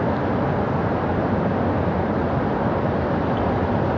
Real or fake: real